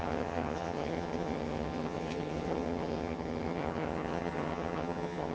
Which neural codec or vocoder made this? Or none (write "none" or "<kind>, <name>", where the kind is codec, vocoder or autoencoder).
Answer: vocoder, HiFi-GAN